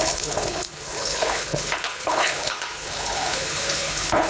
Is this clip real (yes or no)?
no